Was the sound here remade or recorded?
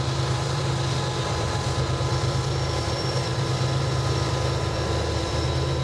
remade